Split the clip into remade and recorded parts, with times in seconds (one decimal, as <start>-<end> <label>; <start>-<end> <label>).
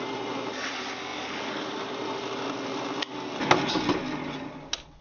0.0-5.0 recorded